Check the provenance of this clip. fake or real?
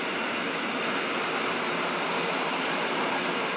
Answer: real